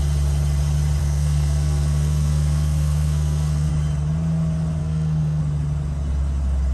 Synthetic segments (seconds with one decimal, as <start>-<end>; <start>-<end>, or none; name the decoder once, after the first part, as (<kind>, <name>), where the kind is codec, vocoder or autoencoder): 1.0-3.7 (codec, SNAC); 4.8-5.4